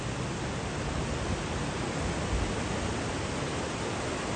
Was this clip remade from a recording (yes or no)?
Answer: no